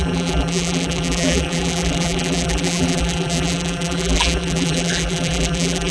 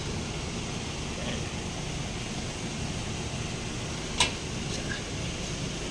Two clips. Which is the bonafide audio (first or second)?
second